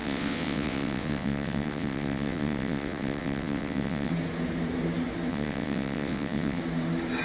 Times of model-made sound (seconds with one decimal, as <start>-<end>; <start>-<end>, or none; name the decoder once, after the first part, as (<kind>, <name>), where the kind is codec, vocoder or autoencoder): 0.0-4.1 (vocoder, WaveNeXt); 5.3-6.6